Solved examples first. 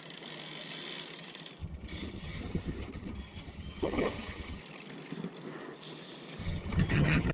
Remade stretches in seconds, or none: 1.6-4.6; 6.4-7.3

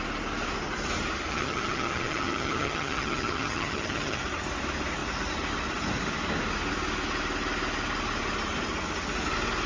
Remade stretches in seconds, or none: 1.3-4.2

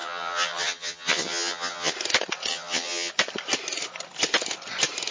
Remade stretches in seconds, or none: 0.0-1.9; 2.5-3.1

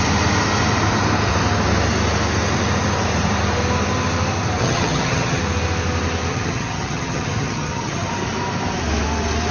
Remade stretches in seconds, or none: 4.6-5.4; 6.3-8.1

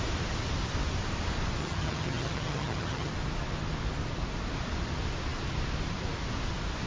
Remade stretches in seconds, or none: 1.6-3.1